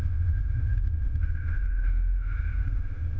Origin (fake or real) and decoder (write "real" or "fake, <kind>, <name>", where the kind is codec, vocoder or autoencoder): fake, autoencoder, DAC-VAE